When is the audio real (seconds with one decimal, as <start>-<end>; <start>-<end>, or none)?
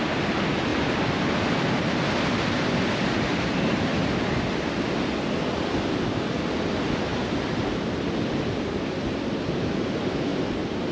0.0-10.9